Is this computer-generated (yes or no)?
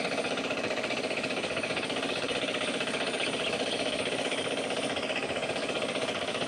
yes